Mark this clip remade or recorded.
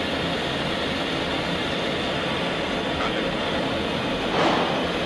recorded